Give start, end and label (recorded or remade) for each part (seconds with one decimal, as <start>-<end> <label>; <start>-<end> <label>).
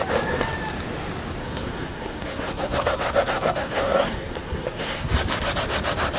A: 0.0-1.4 recorded; 1.4-5.1 remade; 5.1-6.2 recorded